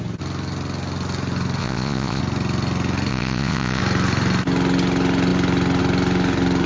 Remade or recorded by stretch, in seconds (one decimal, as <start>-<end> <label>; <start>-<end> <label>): 0.0-1.6 recorded; 1.6-2.2 remade; 2.2-3.1 recorded; 3.1-3.8 remade; 3.8-6.7 recorded